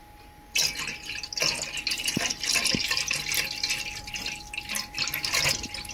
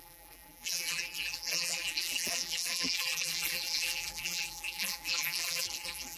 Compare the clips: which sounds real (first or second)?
first